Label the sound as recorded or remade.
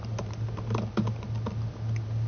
recorded